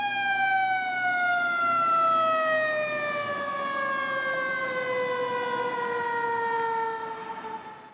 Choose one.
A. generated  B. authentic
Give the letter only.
B